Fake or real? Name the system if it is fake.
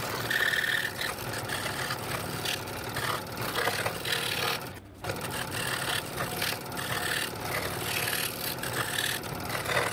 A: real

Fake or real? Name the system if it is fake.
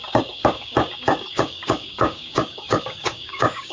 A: fake, codec, DAC